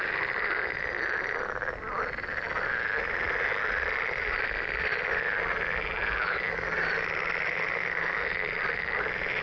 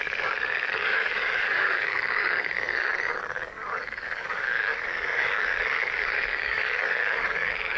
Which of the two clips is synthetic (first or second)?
second